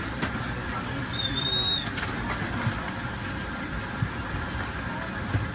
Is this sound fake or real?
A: real